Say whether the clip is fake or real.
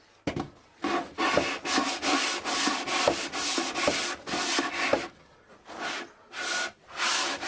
real